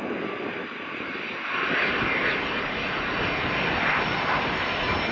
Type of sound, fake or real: real